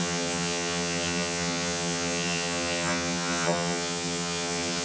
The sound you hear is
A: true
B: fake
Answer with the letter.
B